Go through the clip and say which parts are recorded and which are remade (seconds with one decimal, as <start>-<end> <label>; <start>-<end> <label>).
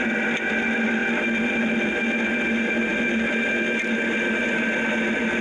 0.0-5.4 recorded